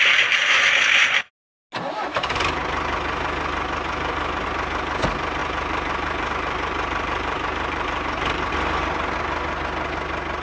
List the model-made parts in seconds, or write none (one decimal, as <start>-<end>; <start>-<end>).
5.4-8.5